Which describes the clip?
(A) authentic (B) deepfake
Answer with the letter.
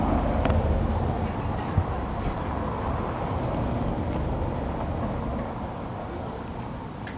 A